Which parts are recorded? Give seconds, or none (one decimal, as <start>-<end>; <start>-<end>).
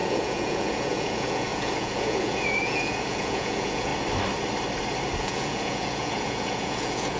3.9-5.2